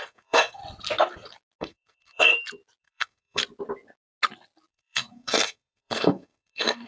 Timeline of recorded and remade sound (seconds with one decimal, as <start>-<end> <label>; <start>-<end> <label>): 0.0-0.6 remade; 0.6-1.6 recorded; 1.6-2.3 remade; 2.3-2.8 recorded; 2.8-3.4 remade; 3.4-4.7 recorded; 4.7-6.9 remade